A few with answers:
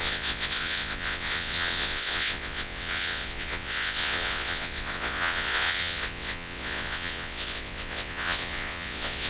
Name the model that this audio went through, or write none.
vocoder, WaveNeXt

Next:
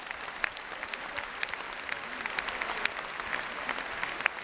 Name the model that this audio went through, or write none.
none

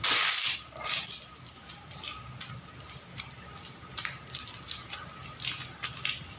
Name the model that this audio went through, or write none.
none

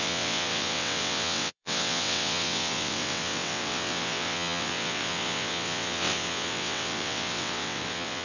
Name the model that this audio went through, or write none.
vocoder, WaveNeXt